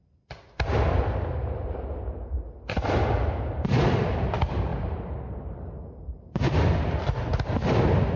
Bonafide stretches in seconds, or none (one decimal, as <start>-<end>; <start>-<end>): 0.0-8.2

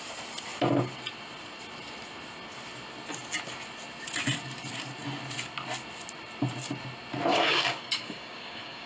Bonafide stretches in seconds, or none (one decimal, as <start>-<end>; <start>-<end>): 0.0-7.3

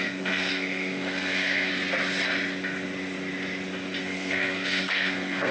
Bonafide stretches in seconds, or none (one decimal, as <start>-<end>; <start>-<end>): 1.7-4.0

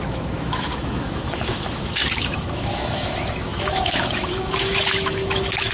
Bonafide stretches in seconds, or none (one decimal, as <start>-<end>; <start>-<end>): none

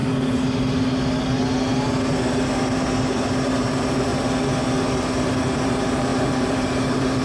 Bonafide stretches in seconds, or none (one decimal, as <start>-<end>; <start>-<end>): 0.0-3.4; 4.1-5.4

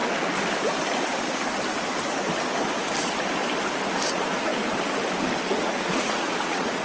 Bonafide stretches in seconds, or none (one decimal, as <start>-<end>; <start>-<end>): 0.0-4.1; 4.5-5.6

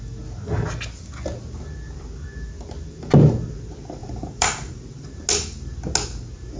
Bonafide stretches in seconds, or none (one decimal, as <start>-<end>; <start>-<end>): 0.0-4.0; 4.8-6.6